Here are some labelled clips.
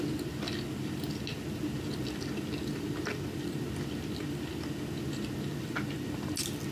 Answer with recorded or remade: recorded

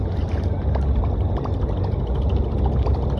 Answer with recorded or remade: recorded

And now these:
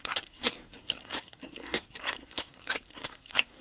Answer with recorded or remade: remade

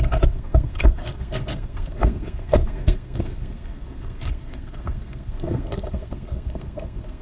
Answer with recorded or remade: remade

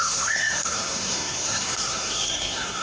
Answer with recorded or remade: remade